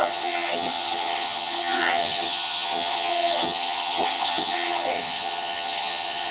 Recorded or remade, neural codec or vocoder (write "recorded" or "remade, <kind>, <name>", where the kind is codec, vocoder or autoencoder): remade, vocoder, HiFi-GAN